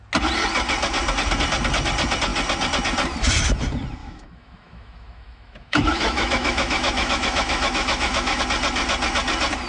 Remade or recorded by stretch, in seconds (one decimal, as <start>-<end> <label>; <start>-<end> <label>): 0.0-4.0 recorded; 4.0-8.4 remade; 8.4-9.7 recorded